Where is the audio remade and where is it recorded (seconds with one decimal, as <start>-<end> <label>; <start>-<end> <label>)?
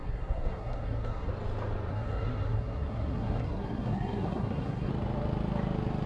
0.0-1.3 remade; 1.3-1.9 recorded; 1.9-4.9 remade; 4.9-6.1 recorded